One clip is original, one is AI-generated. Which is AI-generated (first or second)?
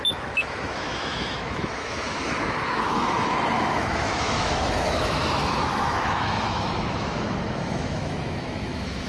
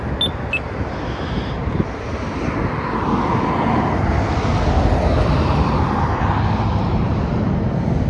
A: first